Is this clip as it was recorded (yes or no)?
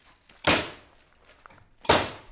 yes